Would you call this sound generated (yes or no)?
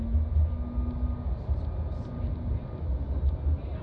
no